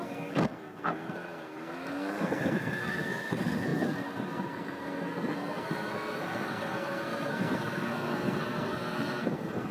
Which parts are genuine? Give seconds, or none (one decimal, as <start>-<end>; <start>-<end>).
none